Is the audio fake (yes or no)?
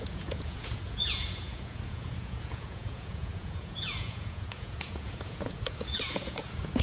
yes